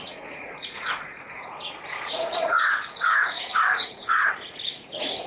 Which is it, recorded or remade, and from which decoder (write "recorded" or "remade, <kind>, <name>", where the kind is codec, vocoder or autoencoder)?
remade, vocoder, Vocos